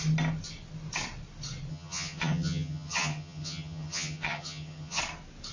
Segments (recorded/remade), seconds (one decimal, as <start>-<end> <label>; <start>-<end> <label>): 0.0-1.7 recorded; 1.7-5.0 remade; 5.0-5.5 recorded